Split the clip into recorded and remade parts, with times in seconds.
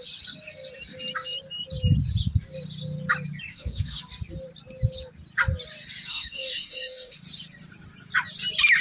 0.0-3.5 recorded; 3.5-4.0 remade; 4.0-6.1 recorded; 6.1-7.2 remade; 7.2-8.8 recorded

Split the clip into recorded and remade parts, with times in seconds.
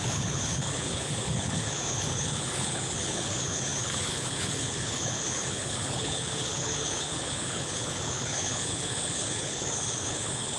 0.0-10.6 remade